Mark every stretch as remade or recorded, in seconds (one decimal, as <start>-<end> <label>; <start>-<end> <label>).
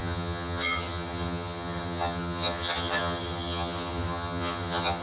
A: 0.0-5.0 remade